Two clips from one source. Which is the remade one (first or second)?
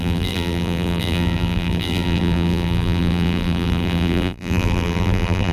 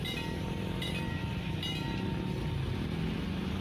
first